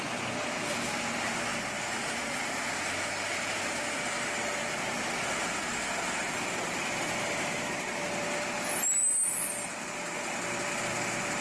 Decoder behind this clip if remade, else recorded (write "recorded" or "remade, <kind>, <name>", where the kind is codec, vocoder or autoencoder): recorded